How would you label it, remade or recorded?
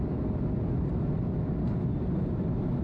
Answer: recorded